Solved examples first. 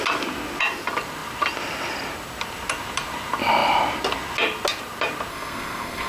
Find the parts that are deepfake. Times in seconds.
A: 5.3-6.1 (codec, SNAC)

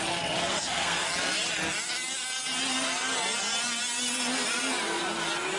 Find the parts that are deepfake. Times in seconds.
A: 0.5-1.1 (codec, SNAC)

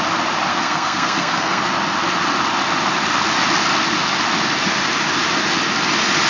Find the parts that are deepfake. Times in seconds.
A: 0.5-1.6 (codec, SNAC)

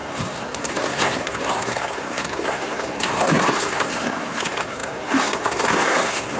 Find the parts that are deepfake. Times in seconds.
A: 0.0-6.4 (codec, SNAC)

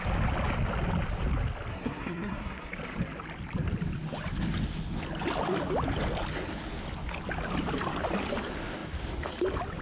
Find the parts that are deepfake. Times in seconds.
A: 1.7-2.7 (codec, SNAC)

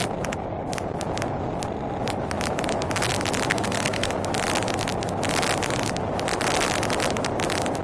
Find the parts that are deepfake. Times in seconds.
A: 3.5-4.1 (codec, SNAC)